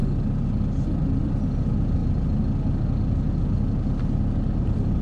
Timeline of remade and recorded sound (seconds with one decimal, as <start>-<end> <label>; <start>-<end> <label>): 0.0-1.2 recorded; 1.2-2.0 remade; 2.0-4.6 recorded; 4.6-5.0 remade